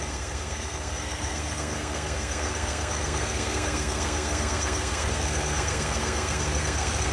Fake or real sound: fake